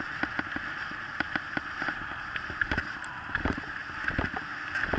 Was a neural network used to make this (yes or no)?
no